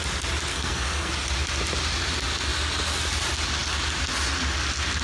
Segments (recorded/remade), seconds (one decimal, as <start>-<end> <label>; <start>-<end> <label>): 0.0-0.5 recorded; 0.5-1.1 remade; 1.1-5.0 recorded